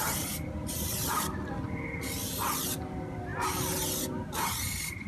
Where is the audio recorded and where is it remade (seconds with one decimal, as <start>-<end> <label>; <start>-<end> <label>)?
0.0-5.1 recorded

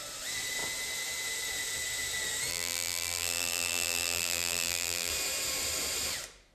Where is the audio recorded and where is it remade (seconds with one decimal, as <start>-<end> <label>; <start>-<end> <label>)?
0.0-2.5 recorded; 2.5-5.1 remade; 5.1-6.5 recorded

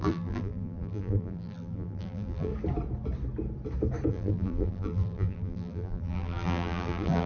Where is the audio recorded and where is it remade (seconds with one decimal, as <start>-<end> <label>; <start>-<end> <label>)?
0.0-2.5 remade; 2.5-4.1 recorded; 4.1-7.3 remade

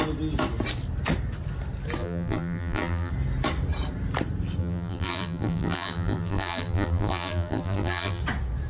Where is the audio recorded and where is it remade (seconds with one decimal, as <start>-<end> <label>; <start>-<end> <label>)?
0.0-2.0 recorded; 2.0-3.1 remade; 3.1-4.6 recorded; 4.6-8.2 remade; 8.2-8.7 recorded

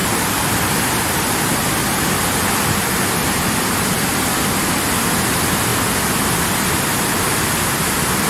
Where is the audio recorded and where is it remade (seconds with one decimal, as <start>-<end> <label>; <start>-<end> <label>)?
0.0-1.3 remade; 1.3-8.3 recorded